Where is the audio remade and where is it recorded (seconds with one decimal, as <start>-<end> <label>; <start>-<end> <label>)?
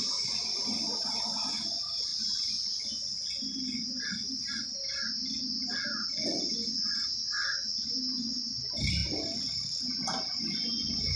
0.0-2.1 recorded; 2.1-4.4 remade; 4.4-9.0 recorded; 9.0-9.8 remade; 9.8-11.2 recorded